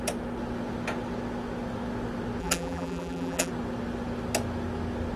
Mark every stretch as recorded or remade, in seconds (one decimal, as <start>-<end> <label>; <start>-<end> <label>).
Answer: 0.0-2.4 recorded; 2.4-3.5 remade; 3.5-5.2 recorded